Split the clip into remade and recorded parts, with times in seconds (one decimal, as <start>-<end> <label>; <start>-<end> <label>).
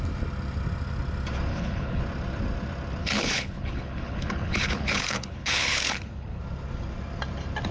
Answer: 0.0-1.5 recorded; 1.5-2.0 remade; 2.0-3.0 recorded; 3.0-6.4 remade; 6.4-7.7 recorded